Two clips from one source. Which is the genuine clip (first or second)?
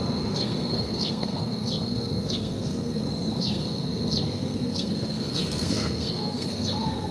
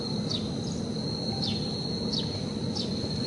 second